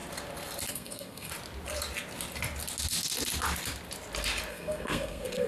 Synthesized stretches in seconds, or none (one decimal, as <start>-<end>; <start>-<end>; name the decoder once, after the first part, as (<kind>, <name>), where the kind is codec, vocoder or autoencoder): 0.7-1.3 (codec, SNAC); 4.5-5.5